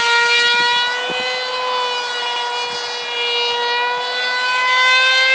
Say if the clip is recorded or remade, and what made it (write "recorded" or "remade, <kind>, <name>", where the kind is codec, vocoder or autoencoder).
recorded